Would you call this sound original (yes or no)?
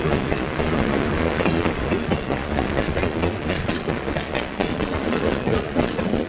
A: no